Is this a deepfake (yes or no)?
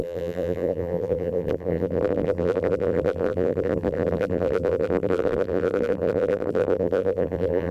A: yes